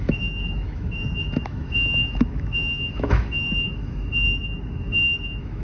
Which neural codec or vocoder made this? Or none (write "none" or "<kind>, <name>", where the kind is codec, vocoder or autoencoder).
autoencoder, DAC-VAE